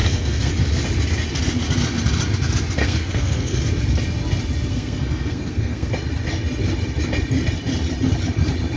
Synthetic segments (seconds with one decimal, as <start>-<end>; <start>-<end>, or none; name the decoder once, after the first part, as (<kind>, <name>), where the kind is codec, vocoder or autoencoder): 0.0-0.5 (codec, SNAC); 2.8-3.6; 4.7-5.9